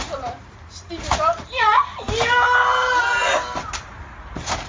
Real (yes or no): yes